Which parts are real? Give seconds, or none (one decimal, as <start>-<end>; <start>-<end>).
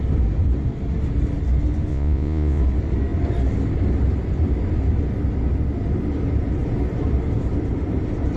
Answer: 0.0-1.9; 2.6-8.4